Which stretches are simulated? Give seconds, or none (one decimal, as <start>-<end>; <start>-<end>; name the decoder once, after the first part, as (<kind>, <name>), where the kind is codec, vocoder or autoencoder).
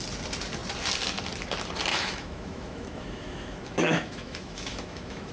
1.9-5.3 (autoencoder, DAC-VAE)